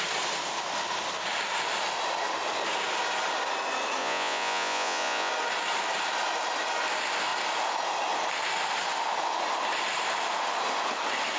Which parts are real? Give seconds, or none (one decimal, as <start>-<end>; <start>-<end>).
0.0-4.0; 5.3-11.4